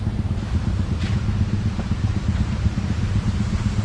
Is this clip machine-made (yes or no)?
yes